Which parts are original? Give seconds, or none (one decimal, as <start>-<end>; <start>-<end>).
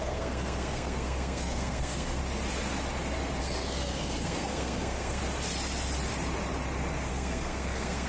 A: 2.2-3.4; 5.2-7.1